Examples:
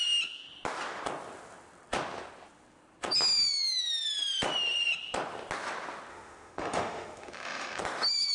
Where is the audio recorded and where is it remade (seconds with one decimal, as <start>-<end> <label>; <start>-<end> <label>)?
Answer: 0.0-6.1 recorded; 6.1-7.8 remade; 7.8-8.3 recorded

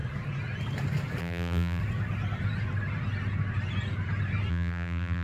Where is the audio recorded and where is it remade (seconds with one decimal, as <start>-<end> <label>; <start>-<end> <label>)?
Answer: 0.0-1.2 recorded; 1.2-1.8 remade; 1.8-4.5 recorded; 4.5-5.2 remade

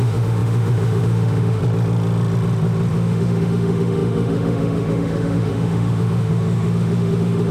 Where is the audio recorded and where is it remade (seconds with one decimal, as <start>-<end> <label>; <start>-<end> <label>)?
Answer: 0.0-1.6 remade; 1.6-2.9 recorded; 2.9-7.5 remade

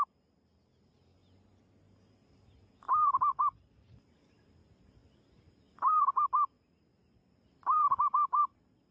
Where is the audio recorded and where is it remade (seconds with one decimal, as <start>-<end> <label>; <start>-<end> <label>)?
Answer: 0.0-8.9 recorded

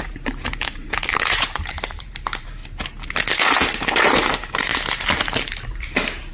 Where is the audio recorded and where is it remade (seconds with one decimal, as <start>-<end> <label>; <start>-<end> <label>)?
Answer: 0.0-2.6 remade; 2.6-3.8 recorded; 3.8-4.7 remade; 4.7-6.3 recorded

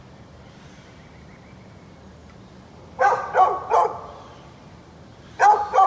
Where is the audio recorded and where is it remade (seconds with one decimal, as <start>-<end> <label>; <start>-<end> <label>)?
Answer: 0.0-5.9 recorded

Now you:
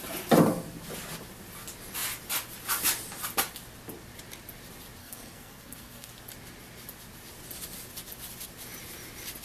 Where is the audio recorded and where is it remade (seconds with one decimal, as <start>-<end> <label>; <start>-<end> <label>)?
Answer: 0.0-5.0 recorded; 5.0-6.1 remade; 6.1-9.4 recorded